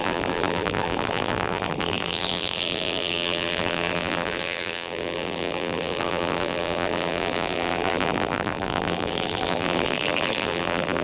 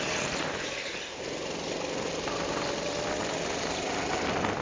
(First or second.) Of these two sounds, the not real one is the first